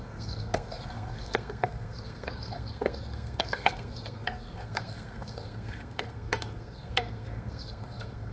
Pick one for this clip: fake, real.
fake